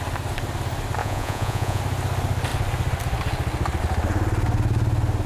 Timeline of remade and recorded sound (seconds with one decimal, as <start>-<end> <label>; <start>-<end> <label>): 0.0-1.0 recorded; 1.0-1.8 remade; 1.8-5.3 recorded